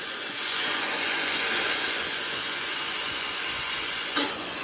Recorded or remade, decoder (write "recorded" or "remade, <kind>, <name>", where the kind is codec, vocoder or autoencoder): remade, vocoder, Vocos